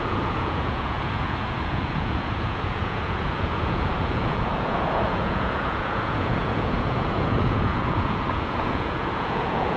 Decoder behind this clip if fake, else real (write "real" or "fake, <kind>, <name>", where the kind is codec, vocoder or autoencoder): fake, vocoder, Vocos